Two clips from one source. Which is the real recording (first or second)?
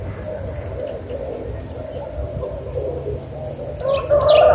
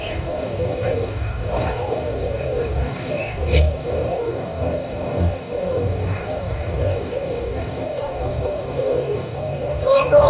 first